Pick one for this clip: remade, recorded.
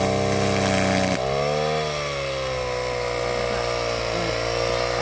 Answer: recorded